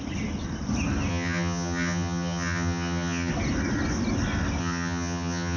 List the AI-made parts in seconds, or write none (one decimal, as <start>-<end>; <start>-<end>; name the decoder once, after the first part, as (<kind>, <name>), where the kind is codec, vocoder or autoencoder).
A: 1.1-3.3 (vocoder, HiFi-GAN); 4.6-5.6